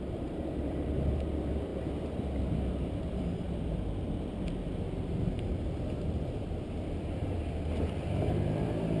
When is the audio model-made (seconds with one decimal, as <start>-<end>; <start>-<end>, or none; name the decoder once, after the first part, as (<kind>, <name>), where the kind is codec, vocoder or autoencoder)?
0.0-9.0 (vocoder, BigVGAN v2)